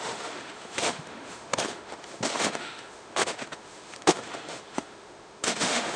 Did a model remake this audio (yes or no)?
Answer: yes